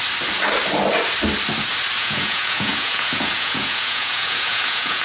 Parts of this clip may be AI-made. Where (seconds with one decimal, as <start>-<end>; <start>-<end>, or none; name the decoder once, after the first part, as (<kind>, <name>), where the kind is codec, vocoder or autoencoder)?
2.0-5.0 (vocoder, Vocos)